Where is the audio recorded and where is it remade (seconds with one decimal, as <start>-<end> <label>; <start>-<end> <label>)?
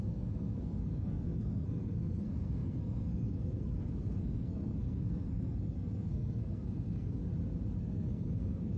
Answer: 0.0-7.2 remade; 7.2-7.8 recorded; 7.8-8.8 remade